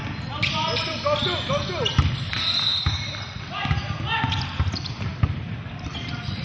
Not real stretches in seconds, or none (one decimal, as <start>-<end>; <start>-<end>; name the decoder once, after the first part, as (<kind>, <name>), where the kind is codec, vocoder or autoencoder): none